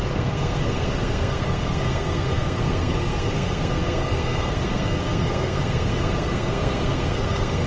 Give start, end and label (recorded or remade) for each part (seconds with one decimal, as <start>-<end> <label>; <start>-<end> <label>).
0.0-7.7 remade